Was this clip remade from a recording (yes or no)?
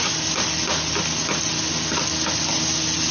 no